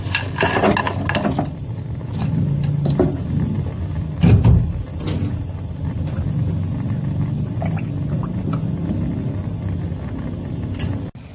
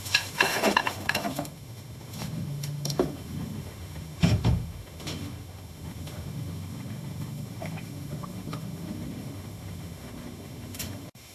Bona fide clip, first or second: first